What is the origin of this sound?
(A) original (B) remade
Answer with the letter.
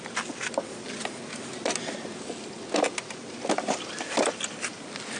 A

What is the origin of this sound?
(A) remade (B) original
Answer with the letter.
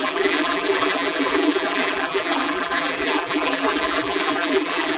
A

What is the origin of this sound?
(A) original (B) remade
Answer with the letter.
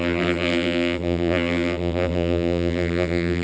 B